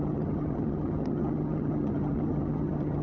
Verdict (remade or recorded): remade